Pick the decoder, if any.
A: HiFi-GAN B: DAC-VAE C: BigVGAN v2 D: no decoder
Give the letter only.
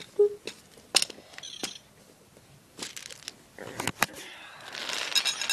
D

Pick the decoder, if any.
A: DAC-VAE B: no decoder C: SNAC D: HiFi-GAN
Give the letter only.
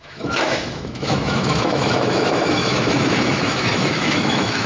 A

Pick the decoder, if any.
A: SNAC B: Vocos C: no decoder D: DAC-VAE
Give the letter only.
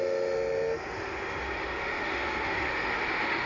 D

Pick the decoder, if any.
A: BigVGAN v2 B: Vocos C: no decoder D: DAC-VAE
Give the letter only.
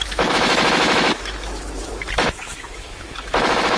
D